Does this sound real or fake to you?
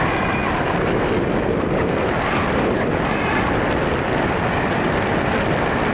real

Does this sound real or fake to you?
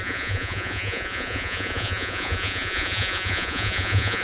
fake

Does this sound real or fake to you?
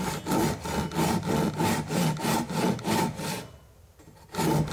real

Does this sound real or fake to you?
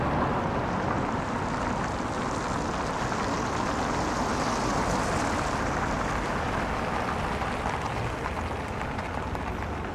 real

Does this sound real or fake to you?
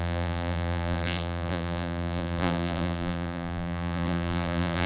fake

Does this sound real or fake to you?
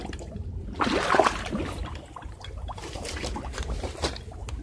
real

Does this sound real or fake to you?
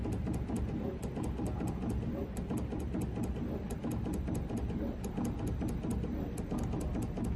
real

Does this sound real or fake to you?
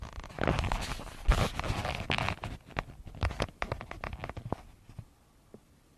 real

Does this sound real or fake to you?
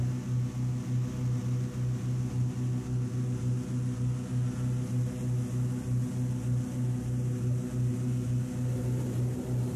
real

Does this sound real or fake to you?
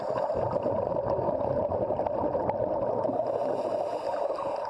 real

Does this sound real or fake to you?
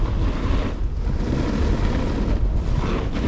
real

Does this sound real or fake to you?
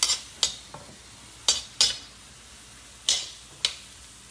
real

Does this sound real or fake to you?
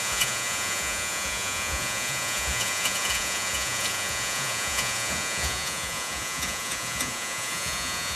fake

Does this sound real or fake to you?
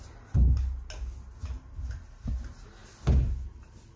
real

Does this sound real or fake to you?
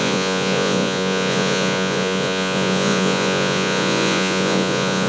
fake